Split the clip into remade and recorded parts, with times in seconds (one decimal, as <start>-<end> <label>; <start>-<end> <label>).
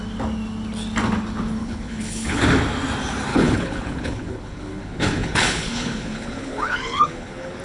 0.0-1.6 recorded; 1.6-2.4 remade; 2.4-3.3 recorded; 3.3-7.6 remade